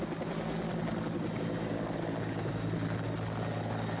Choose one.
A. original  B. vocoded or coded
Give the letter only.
A